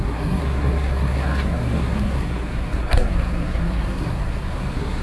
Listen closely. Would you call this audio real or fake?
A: fake